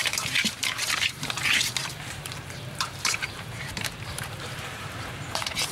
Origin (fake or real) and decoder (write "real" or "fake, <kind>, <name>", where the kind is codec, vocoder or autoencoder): fake, vocoder, BigVGAN v2